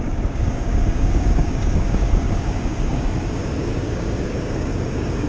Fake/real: fake